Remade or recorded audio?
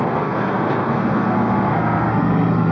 remade